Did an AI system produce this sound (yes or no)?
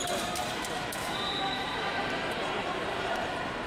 yes